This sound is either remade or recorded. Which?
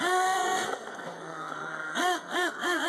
remade